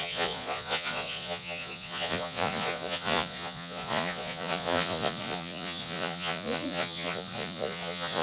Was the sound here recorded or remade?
remade